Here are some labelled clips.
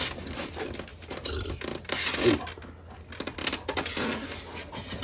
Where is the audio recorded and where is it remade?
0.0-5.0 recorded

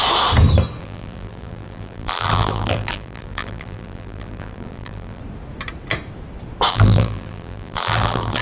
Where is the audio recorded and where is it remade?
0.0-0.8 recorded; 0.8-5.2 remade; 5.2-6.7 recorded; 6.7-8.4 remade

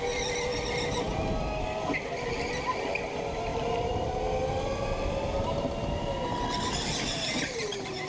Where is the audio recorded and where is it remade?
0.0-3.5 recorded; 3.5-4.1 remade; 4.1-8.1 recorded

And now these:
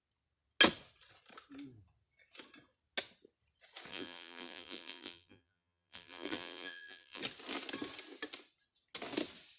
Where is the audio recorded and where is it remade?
0.0-3.9 recorded; 3.9-7.2 remade; 7.2-9.6 recorded

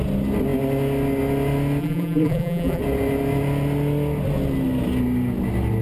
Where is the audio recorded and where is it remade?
0.0-1.8 recorded; 1.8-2.8 remade; 2.8-5.8 recorded